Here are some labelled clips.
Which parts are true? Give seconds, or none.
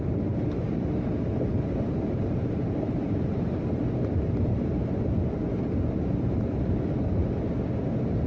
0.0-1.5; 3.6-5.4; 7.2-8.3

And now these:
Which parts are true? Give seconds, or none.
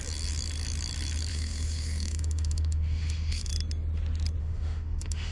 0.0-1.3; 3.5-4.4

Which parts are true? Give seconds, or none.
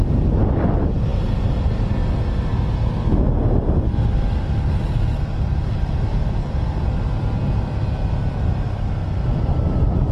0.0-10.1